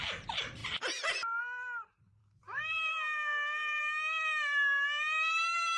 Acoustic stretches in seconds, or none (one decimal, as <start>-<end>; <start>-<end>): 0.0-2.2; 3.8-5.8